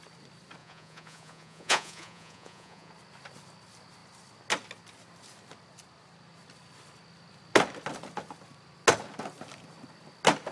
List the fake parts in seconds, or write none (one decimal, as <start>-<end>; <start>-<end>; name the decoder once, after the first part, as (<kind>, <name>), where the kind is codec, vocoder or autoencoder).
0.6-2.9 (vocoder, Vocos)

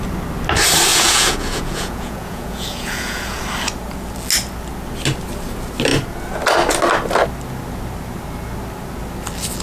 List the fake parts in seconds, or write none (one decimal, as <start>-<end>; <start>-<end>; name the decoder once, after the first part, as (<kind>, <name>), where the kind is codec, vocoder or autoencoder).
0.9-3.4 (vocoder, Vocos)

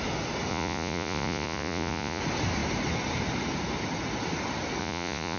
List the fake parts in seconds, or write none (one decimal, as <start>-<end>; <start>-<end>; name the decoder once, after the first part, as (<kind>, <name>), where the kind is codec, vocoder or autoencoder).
0.5-2.2 (vocoder, Vocos); 4.8-5.4

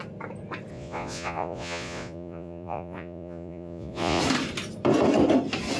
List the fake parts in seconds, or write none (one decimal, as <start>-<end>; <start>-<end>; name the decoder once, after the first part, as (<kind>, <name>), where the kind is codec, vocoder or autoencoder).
0.7-4.2 (vocoder, Vocos)

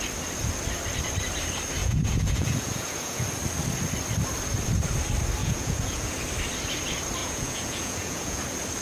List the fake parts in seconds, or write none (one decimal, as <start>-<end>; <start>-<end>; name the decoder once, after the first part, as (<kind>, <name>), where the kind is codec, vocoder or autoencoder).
1.8-3.3 (vocoder, Vocos); 5.4-6.2; 7.2-8.4

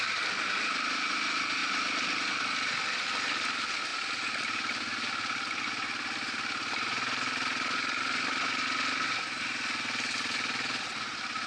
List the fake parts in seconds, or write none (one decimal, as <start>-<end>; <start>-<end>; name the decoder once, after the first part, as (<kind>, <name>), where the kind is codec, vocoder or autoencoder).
none

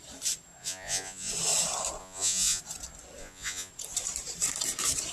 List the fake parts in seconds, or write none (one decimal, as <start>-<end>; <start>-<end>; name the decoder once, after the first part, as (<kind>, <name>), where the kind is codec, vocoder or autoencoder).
0.6-1.3 (vocoder, Vocos); 2.0-2.6; 3.2-3.7